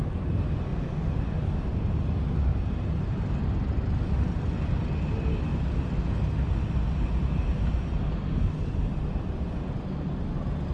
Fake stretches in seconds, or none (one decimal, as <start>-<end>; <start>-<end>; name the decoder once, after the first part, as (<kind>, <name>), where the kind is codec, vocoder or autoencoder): 7.2-9.0 (vocoder, BigVGAN v2)